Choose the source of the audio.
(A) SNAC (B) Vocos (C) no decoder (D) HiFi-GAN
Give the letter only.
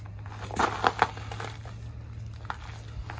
C